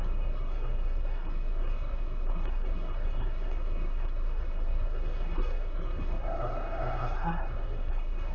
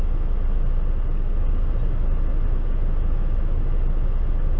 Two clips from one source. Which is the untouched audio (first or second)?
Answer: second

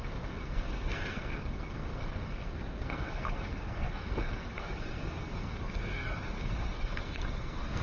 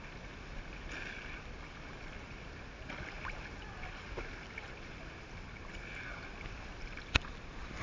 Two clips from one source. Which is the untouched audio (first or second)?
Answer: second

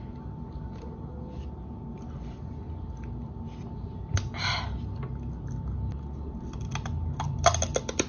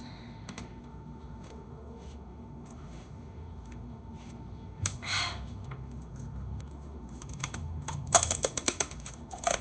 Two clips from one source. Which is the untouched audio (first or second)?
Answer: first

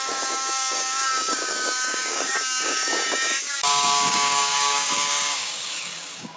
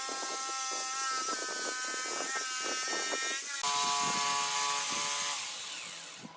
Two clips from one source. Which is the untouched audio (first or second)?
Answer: second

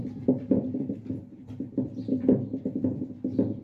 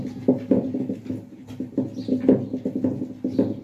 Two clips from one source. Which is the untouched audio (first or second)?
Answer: second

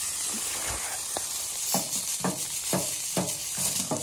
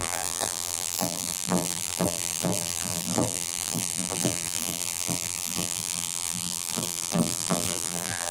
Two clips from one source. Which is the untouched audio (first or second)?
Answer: first